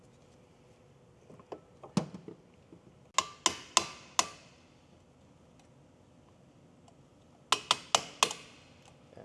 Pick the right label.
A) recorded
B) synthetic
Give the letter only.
A